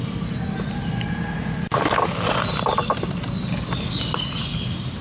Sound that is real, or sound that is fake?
real